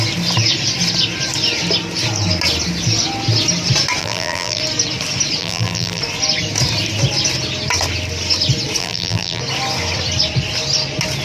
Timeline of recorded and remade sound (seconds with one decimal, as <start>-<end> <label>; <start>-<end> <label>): 0.0-4.0 recorded; 4.0-4.6 remade; 4.6-5.4 recorded; 5.4-6.0 remade; 6.0-8.8 recorded; 8.8-9.4 remade; 9.4-11.2 recorded